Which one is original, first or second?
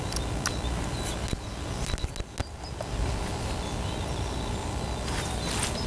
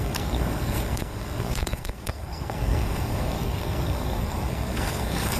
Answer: first